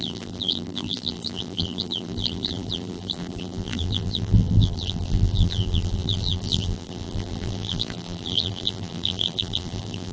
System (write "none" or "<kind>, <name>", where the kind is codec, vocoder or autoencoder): vocoder, BigVGAN v2